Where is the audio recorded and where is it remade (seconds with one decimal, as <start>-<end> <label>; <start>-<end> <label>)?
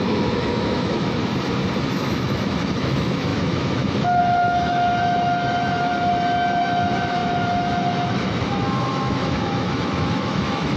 0.0-1.2 remade; 1.2-1.9 recorded; 1.9-5.9 remade; 5.9-6.6 recorded; 6.6-10.8 remade